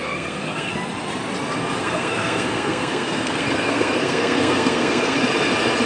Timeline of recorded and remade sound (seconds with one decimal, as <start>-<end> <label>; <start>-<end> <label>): 0.0-0.7 remade; 0.7-1.8 recorded; 1.8-5.2 remade; 5.2-5.9 recorded